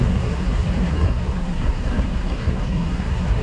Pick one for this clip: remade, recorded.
remade